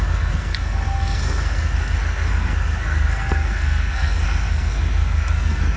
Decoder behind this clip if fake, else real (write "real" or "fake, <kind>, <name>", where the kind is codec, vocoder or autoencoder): fake, codec, SNAC